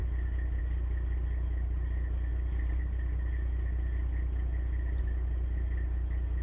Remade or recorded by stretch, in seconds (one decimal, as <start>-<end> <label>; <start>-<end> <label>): 0.0-6.4 recorded